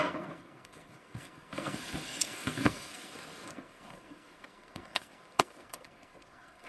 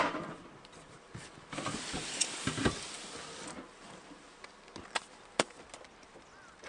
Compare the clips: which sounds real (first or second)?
second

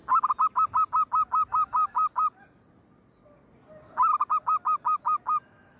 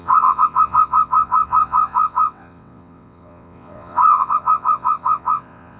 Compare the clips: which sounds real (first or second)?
first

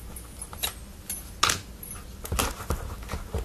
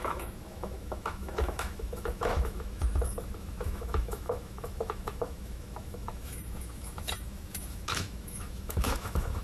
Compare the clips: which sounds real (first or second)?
first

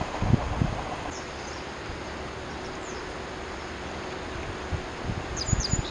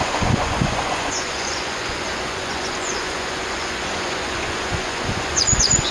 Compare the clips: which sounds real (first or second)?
first